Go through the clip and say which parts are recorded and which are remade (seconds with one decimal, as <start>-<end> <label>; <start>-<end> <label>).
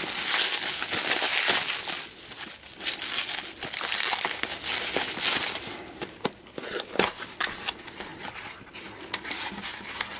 0.0-10.2 recorded